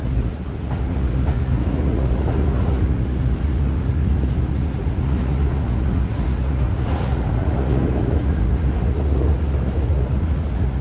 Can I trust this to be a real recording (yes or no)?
no